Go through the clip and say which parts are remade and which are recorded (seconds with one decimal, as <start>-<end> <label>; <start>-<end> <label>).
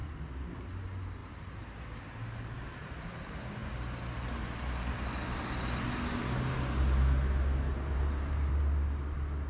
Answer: 0.0-1.2 recorded; 1.2-2.0 remade; 2.0-7.7 recorded; 7.7-8.5 remade; 8.5-9.5 recorded